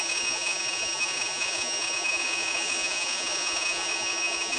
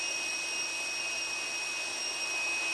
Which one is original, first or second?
second